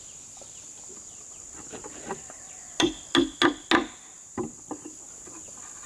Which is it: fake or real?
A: real